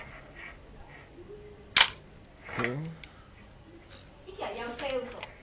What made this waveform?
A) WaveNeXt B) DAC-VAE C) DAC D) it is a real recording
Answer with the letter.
D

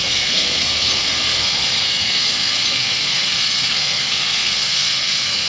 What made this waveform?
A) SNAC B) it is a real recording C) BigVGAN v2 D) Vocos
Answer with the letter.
A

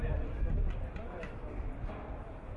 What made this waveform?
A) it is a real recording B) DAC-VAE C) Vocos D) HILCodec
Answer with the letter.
A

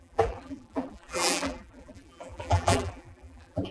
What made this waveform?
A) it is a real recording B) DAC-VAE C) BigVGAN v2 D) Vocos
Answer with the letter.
C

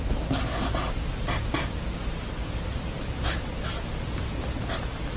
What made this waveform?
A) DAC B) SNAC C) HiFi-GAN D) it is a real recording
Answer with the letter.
D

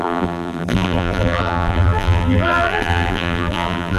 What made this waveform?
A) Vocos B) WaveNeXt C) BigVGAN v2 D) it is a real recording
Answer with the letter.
C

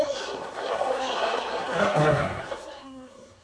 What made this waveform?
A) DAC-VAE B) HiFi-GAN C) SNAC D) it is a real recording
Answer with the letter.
C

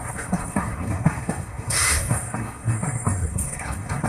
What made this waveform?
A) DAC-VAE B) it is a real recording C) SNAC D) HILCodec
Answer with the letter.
C